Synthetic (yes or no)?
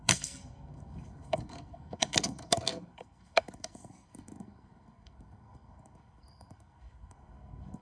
yes